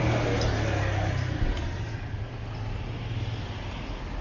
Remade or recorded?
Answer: recorded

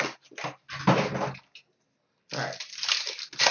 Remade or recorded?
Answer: recorded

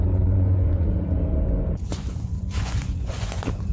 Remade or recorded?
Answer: remade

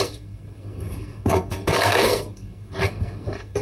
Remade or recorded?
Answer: remade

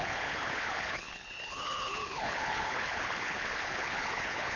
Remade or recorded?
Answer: remade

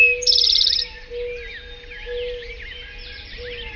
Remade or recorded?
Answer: recorded